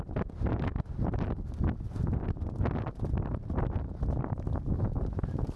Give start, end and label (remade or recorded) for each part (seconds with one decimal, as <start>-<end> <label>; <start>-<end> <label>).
0.0-5.6 recorded